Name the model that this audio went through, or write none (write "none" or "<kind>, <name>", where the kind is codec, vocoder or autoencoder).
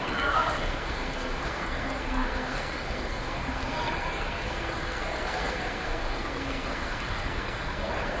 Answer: codec, SNAC